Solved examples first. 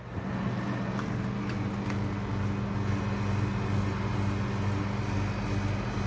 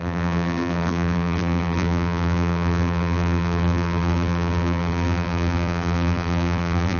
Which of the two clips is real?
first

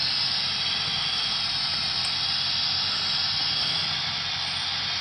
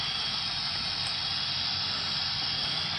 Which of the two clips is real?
first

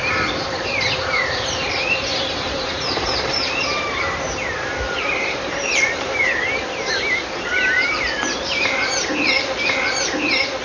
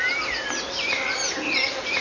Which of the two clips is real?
second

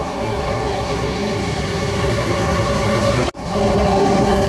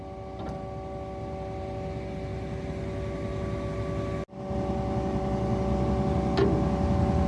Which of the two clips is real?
second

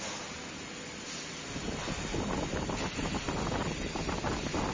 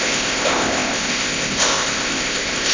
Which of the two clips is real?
first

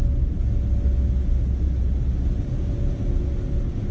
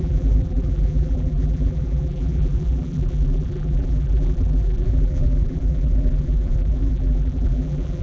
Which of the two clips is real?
first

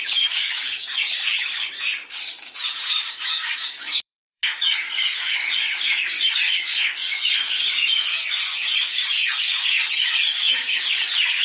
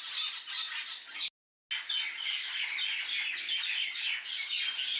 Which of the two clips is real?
second